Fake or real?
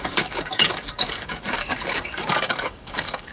fake